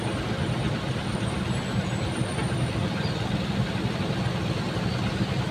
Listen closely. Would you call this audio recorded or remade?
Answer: recorded